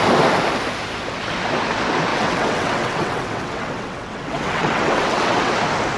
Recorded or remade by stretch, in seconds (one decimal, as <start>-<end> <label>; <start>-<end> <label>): 0.0-2.1 recorded; 2.1-5.5 remade; 5.5-6.0 recorded